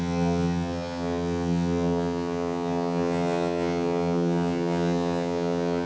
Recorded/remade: remade